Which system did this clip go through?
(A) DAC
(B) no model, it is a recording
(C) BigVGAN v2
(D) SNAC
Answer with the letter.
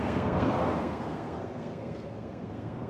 D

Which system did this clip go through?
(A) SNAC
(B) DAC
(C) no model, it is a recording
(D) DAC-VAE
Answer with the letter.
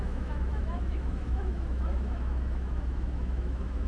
D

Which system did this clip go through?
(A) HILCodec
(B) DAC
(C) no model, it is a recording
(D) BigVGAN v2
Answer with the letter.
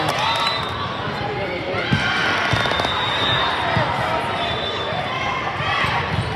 C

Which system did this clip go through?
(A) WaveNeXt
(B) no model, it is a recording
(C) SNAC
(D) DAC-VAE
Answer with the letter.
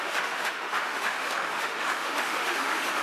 D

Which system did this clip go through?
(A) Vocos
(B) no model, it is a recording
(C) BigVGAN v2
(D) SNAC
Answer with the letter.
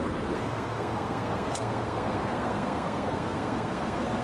D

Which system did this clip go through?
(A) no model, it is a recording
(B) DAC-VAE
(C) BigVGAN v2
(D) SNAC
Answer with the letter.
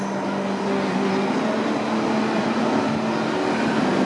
A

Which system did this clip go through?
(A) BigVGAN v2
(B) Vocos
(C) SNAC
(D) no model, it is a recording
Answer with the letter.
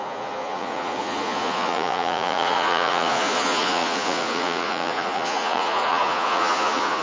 B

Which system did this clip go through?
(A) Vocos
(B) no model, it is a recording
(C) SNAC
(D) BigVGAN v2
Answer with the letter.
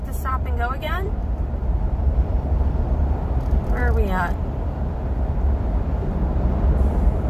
D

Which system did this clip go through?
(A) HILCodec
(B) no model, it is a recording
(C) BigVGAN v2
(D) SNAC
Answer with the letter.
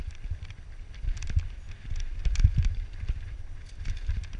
C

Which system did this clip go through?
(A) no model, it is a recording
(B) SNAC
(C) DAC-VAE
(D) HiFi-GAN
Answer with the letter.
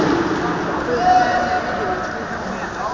A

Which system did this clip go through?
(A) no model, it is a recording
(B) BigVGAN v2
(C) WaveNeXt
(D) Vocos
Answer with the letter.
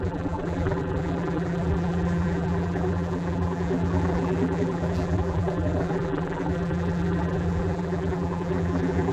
B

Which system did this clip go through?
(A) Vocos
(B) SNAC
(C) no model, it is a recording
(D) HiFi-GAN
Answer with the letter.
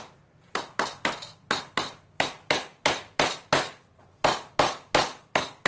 C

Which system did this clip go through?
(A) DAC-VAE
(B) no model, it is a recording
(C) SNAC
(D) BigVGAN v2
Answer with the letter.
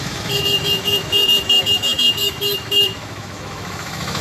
A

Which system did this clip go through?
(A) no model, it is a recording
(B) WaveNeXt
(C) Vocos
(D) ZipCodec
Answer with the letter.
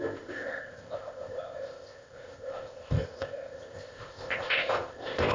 D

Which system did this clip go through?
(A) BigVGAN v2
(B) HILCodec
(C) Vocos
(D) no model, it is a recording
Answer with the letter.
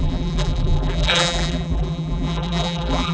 A